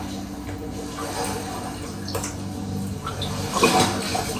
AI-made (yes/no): no